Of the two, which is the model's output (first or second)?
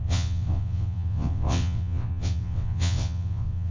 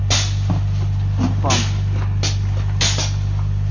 first